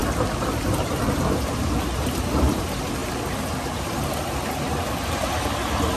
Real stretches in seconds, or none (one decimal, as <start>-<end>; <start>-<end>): 0.0-6.0